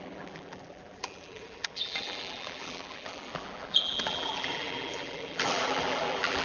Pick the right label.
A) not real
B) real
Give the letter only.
A